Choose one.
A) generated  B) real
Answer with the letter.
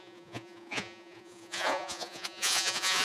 A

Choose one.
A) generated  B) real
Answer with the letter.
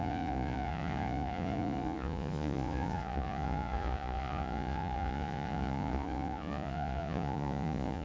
A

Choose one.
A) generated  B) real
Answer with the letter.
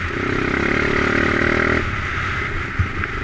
B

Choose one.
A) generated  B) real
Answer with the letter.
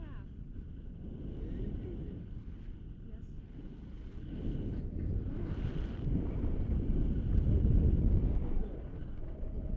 B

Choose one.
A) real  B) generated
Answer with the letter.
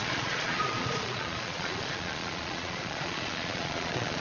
B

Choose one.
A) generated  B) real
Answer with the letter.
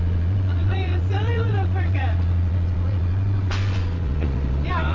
A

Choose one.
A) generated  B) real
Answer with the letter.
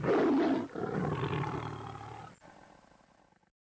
B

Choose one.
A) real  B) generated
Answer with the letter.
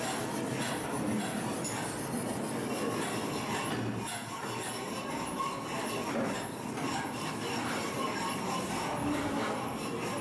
A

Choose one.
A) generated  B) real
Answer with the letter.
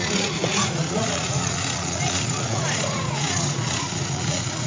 A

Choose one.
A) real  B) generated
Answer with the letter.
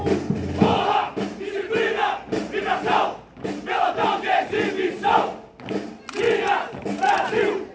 A